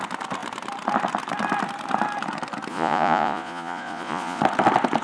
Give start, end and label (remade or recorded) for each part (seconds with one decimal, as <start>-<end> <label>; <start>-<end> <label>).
0.0-2.7 recorded; 2.7-4.4 remade; 4.4-5.0 recorded